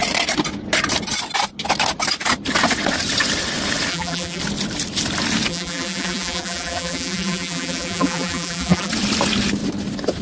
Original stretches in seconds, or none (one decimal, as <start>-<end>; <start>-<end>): 0.0-3.9; 4.4-5.5; 8.9-10.2